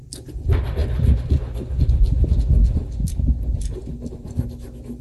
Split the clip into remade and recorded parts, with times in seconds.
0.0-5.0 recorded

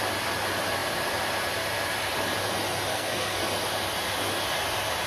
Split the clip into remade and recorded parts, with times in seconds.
0.0-2.9 recorded; 2.9-3.4 remade; 3.4-5.1 recorded